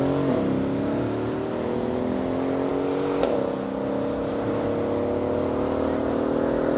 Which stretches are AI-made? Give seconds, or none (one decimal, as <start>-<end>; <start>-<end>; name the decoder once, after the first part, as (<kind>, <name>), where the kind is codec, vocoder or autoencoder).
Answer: none